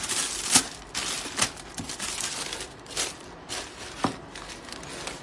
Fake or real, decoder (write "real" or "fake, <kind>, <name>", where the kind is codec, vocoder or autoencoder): real